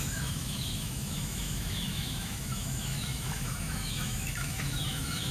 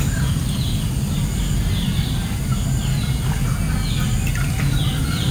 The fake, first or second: first